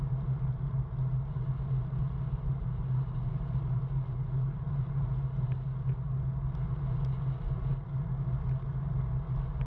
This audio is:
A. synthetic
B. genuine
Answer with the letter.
B